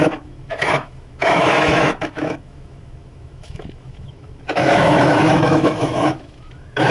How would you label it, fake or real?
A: fake